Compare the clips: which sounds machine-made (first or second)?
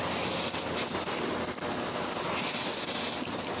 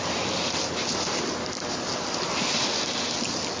second